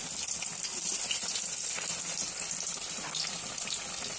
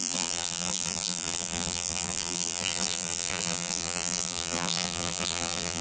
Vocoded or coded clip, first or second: second